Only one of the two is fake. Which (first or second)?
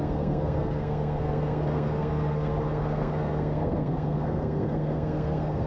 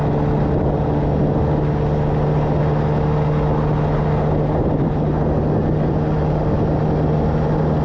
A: first